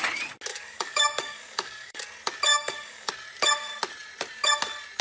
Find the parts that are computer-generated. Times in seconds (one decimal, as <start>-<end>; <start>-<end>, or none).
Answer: 0.5-2.0; 2.5-3.1